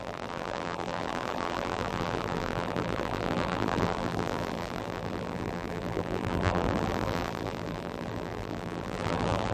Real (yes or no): no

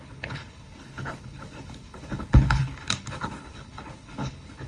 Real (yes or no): no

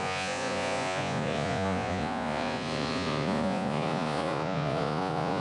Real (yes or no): no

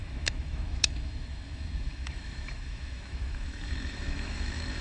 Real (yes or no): no